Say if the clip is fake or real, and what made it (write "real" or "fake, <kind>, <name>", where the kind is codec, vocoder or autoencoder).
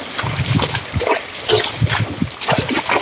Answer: real